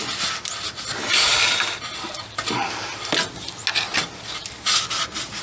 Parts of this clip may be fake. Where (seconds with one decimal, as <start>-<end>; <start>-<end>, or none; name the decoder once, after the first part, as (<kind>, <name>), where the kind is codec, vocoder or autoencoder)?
none

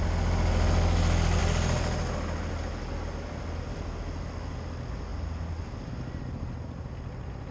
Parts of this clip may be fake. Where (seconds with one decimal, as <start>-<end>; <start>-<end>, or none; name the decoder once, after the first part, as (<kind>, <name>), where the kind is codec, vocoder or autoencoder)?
none

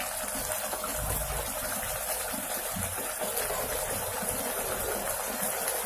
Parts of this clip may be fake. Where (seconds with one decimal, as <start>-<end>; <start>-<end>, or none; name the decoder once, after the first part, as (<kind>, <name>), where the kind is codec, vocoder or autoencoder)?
0.9-2.8 (vocoder, BigVGAN v2)

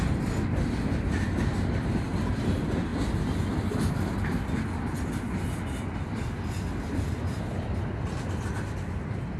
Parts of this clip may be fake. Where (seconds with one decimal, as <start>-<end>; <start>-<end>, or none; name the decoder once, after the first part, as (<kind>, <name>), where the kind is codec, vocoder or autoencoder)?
none